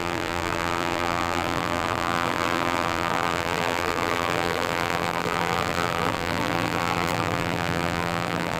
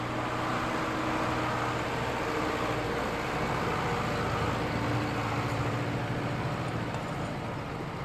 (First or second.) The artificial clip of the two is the first